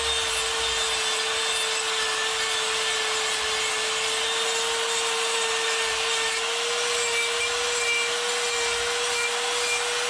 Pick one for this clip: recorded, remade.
recorded